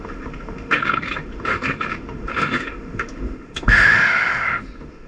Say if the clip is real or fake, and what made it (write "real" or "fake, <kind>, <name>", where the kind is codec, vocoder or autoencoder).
fake, autoencoder, DAC-VAE